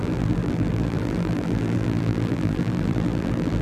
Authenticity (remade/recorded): remade